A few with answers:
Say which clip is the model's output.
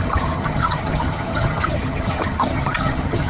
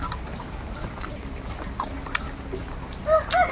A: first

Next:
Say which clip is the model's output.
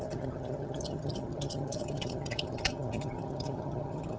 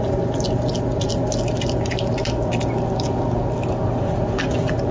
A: first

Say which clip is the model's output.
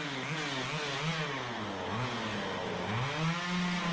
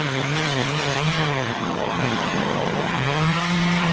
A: second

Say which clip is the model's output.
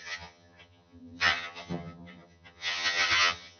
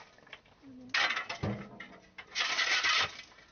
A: first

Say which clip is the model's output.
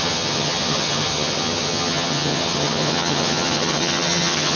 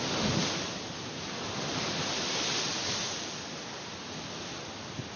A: first